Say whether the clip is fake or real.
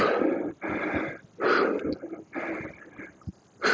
real